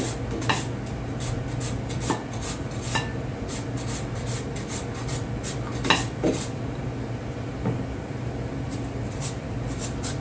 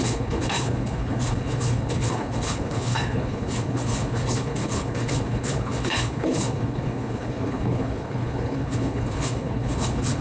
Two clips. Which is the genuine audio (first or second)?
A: first